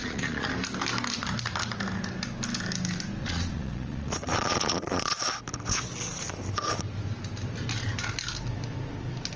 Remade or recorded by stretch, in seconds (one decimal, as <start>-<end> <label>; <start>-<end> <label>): 0.0-0.5 remade; 0.5-3.2 recorded; 3.2-5.2 remade; 5.2-9.4 recorded